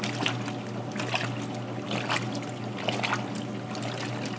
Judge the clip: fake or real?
real